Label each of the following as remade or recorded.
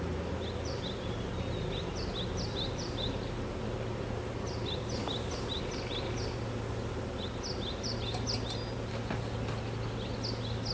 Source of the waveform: recorded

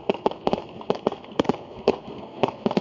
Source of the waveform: remade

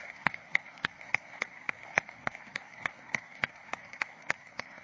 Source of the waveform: remade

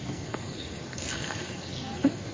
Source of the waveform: remade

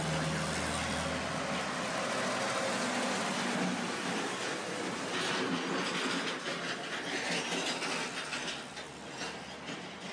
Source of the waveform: recorded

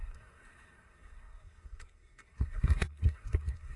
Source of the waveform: remade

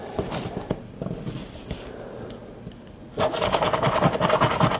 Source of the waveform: recorded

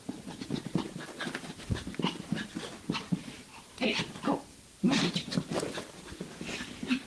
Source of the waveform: recorded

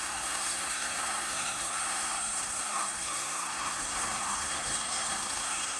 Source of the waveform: remade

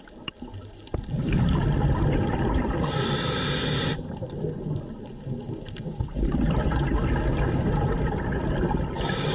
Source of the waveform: recorded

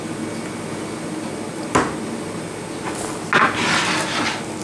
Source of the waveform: recorded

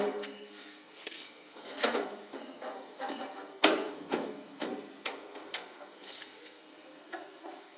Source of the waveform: remade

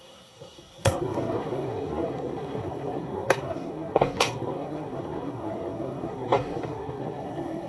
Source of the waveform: remade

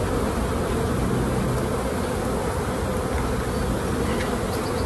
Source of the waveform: recorded